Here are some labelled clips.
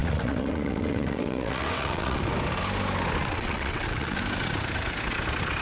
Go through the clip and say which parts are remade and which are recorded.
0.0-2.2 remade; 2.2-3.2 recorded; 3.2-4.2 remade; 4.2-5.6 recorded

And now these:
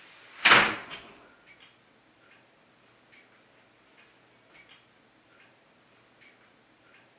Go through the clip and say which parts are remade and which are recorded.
0.0-0.8 recorded; 0.8-1.5 remade; 1.5-7.2 recorded

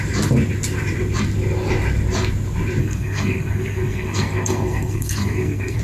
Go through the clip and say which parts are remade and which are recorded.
0.0-2.8 recorded; 2.8-5.8 remade

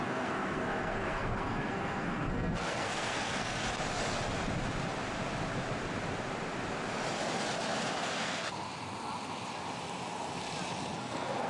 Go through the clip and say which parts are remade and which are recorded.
0.0-3.6 remade; 3.6-8.1 recorded; 8.1-8.6 remade; 8.6-11.0 recorded; 11.0-11.5 remade

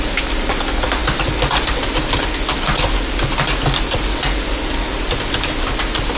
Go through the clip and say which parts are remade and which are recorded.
0.0-6.2 recorded

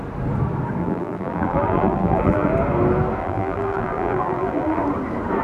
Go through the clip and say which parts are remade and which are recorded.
0.0-0.8 recorded; 0.8-2.5 remade; 2.5-3.2 recorded; 3.2-4.8 remade; 4.8-5.4 recorded